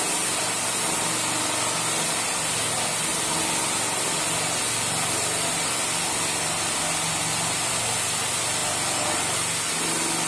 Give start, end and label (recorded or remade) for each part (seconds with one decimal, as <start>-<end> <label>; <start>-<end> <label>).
0.0-10.3 recorded